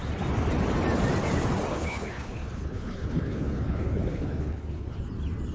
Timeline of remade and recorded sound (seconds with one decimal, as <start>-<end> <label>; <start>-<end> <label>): 0.0-1.7 recorded; 1.7-5.0 remade; 5.0-5.5 recorded